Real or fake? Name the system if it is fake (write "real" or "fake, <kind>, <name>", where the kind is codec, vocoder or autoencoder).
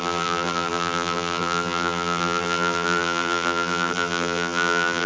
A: fake, vocoder, BigVGAN v2